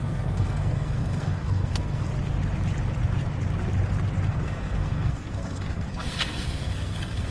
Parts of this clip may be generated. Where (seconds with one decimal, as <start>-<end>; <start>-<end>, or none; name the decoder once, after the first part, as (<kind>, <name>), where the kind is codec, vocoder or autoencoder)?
0.0-2.1 (codec, SNAC); 4.3-7.3